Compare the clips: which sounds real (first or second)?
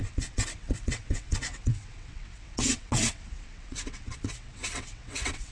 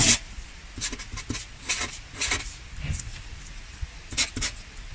second